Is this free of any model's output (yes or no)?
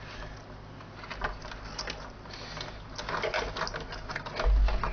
yes